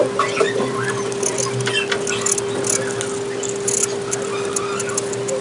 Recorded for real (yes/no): yes